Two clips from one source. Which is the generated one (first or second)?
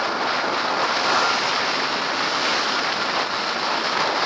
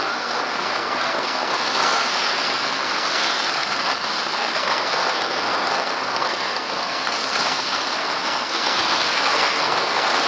second